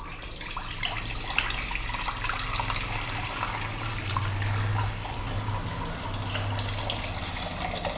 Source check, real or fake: real